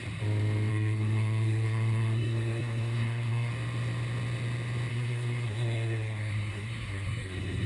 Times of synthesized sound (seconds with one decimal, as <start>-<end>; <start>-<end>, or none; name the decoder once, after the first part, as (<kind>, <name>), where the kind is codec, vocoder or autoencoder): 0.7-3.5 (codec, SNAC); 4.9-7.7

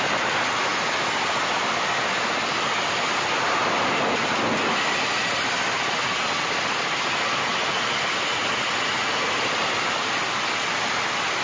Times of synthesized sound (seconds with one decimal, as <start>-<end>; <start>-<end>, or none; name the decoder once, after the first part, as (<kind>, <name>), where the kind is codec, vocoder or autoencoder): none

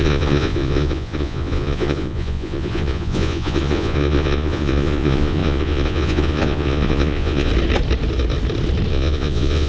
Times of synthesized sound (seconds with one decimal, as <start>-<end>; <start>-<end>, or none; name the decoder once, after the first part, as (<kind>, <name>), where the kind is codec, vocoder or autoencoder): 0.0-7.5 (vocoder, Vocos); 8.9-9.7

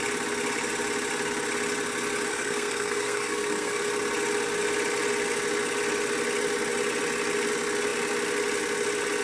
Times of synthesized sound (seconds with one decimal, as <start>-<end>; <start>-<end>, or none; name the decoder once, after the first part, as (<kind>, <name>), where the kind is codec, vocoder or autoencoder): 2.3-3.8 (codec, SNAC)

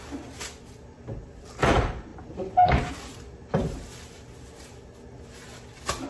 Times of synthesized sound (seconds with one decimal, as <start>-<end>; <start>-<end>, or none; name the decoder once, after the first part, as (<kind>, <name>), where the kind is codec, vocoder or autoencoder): none